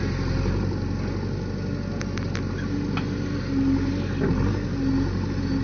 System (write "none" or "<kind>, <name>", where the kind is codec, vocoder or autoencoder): none